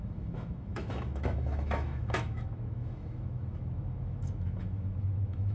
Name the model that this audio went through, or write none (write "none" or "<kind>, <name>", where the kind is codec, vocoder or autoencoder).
autoencoder, DAC-VAE